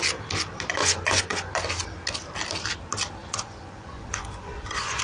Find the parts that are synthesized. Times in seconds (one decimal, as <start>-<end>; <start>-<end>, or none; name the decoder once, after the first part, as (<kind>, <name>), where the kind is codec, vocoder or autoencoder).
0.8-1.5 (vocoder, Vocos); 3.2-5.0